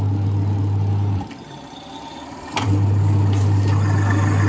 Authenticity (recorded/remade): recorded